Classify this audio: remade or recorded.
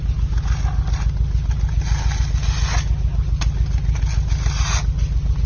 recorded